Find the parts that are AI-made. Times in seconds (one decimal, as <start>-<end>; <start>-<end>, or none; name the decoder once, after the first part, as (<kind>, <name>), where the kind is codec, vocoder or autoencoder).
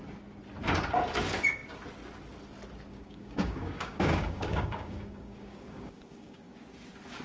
2.9-6.5 (codec, DAC)